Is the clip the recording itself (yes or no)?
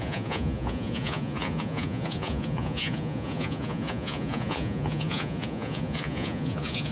no